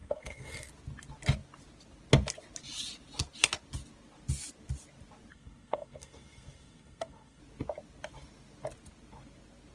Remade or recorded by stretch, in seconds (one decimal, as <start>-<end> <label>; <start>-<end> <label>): 0.0-0.7 remade; 0.7-5.3 recorded; 5.3-7.4 remade; 7.4-9.7 recorded